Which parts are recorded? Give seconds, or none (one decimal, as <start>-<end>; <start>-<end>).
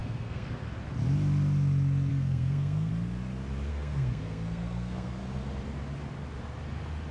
0.7-2.1; 2.9-3.7; 5.2-7.1